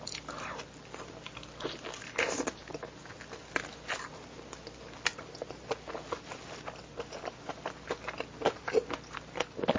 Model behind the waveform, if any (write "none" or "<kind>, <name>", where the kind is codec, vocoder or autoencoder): none